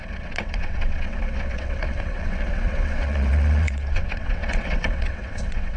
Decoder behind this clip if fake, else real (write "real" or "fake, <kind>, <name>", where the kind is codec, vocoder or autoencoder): fake, vocoder, WaveNeXt